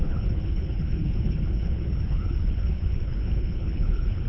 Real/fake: fake